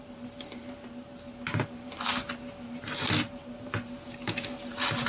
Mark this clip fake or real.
real